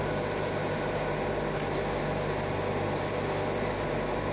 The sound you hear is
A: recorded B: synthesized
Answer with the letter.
A